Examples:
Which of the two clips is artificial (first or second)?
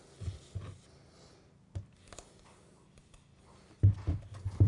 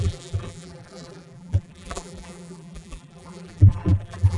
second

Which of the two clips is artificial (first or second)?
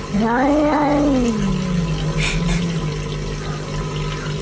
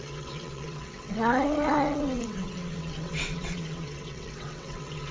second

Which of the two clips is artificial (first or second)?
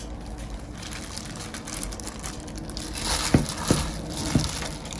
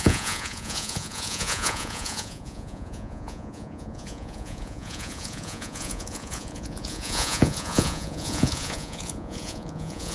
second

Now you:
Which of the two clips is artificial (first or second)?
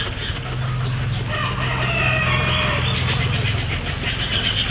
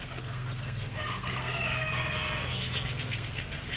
second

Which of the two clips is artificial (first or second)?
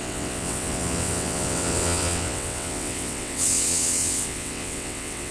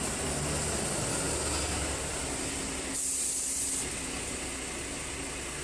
first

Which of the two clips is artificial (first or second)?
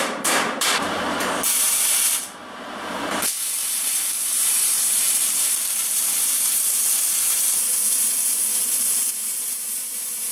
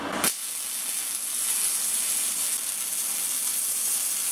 first